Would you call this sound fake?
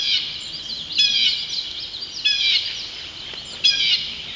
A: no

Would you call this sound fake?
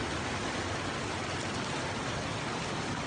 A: no